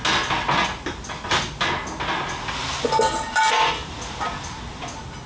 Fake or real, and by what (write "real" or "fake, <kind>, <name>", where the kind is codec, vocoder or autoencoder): real